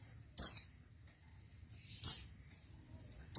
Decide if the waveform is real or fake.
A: real